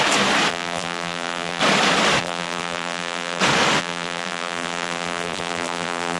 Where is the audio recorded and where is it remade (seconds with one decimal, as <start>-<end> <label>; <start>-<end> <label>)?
0.0-0.5 recorded; 0.5-1.6 remade; 1.6-2.2 recorded; 2.2-3.4 remade; 3.4-3.8 recorded; 3.8-6.2 remade